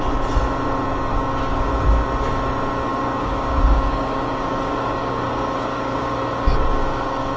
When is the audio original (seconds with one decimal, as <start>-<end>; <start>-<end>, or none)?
0.0-1.1; 1.8-2.9